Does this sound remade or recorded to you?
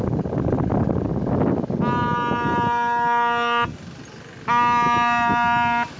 recorded